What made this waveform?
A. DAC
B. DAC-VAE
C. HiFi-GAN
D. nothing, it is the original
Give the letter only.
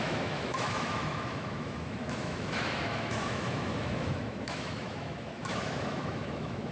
B